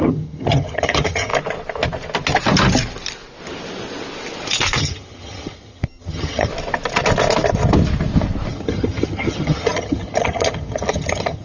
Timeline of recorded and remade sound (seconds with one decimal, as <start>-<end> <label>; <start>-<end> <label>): 0.0-1.3 remade; 1.3-4.8 recorded; 4.8-6.5 remade; 6.5-8.5 recorded; 8.5-11.4 remade